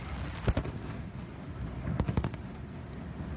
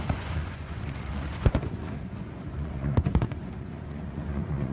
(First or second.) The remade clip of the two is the second